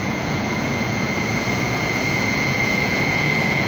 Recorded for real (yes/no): no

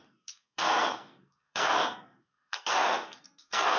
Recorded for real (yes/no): no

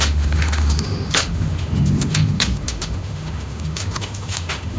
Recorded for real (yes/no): no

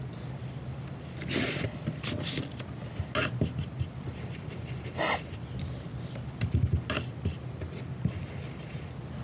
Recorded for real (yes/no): yes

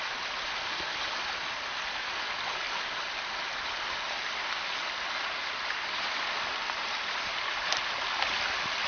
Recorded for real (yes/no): yes